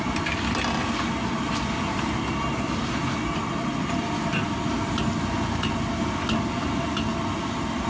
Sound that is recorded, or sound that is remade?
recorded